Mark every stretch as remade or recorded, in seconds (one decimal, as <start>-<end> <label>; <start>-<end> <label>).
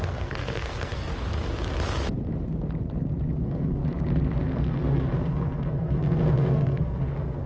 0.0-1.1 remade; 1.1-3.4 recorded; 3.4-3.8 remade; 3.8-4.4 recorded; 4.4-7.5 remade